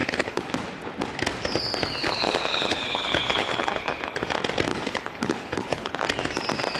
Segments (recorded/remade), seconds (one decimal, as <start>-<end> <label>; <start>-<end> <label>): 0.0-0.5 remade; 0.5-2.0 recorded; 2.0-4.3 remade; 4.3-4.7 recorded; 4.7-6.0 remade; 6.0-6.8 recorded